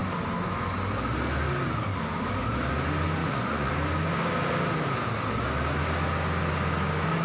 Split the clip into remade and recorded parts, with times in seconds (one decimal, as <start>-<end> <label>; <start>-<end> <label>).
0.0-3.2 recorded; 3.2-3.7 remade; 3.7-7.2 recorded